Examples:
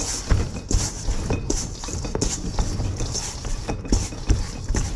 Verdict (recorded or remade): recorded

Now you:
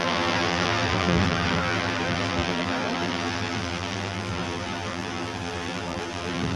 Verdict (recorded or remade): remade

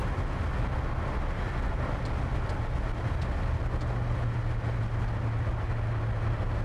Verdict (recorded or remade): recorded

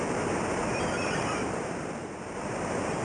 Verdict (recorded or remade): remade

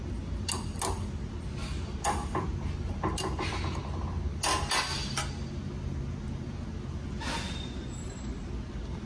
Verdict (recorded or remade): recorded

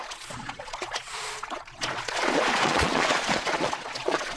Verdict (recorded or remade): remade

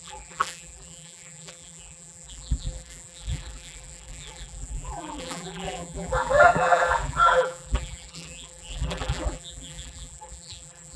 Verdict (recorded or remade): remade